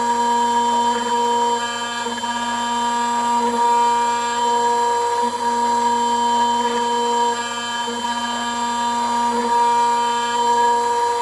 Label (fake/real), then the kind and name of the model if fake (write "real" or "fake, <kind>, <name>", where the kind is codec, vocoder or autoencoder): real